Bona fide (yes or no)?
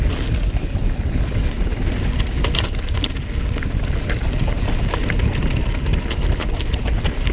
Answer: yes